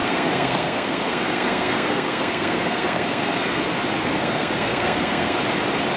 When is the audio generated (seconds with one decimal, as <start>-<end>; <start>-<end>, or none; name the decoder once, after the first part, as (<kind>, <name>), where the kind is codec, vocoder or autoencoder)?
0.0-3.6 (codec, SNAC); 4.0-5.4

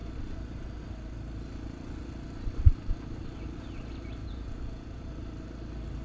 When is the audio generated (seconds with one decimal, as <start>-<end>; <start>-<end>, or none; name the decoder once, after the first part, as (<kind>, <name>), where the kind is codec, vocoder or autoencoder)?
4.2-5.1 (vocoder, Vocos)

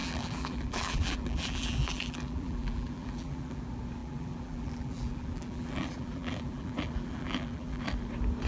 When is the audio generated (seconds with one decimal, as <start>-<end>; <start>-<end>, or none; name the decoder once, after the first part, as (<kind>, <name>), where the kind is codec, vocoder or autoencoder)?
0.0-3.6 (vocoder, BigVGAN v2); 4.0-7.8

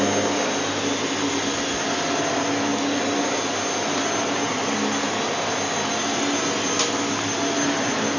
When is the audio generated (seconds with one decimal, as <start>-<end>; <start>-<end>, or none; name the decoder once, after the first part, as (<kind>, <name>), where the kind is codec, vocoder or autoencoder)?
none

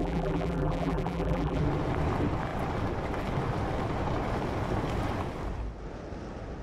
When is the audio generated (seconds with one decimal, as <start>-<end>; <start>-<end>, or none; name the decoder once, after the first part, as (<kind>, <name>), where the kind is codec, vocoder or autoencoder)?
0.0-1.6 (vocoder, BigVGAN v2)

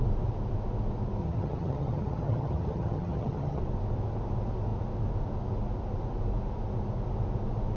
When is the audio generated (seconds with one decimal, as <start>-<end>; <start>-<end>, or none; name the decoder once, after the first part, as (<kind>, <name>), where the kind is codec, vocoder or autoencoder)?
1.2-3.6 (vocoder, HiFi-GAN)